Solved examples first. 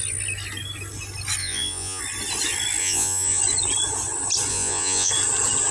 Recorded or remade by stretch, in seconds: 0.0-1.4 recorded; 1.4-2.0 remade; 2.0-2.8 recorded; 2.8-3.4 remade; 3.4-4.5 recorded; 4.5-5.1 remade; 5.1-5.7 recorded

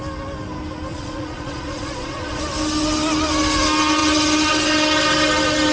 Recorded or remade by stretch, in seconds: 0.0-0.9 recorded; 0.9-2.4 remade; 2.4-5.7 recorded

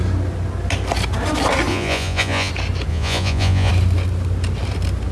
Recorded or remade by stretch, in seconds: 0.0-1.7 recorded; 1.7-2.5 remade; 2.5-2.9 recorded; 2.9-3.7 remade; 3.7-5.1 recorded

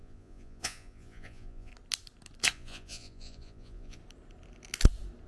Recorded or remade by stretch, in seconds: 0.0-1.7 remade; 1.7-2.5 recorded; 2.5-4.0 remade; 4.0-5.3 recorded